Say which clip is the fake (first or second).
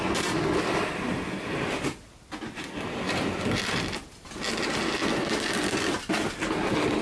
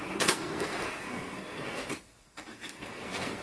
second